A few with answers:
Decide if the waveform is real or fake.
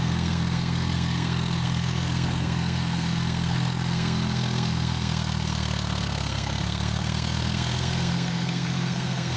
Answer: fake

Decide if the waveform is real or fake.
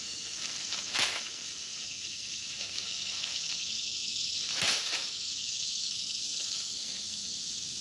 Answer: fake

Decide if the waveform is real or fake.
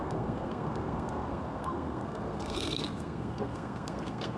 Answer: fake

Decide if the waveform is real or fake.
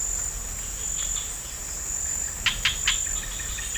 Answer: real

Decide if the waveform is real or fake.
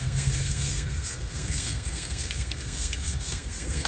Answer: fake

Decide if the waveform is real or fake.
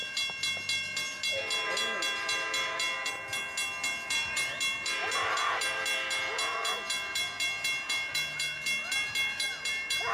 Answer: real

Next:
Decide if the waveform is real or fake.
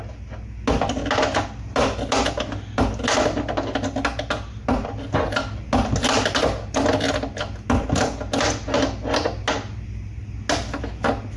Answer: real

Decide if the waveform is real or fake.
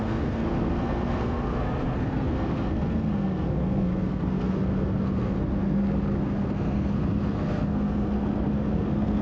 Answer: fake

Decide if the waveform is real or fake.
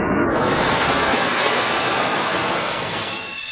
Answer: fake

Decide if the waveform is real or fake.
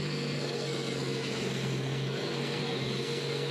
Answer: fake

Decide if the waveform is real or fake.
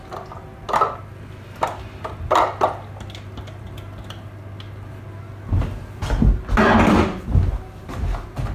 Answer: real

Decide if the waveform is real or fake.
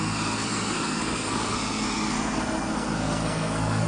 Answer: fake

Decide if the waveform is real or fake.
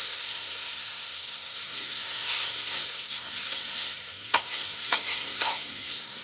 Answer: fake